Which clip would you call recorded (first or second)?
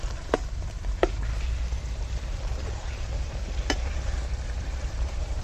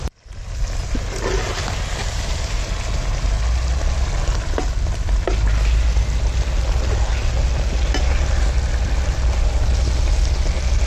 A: second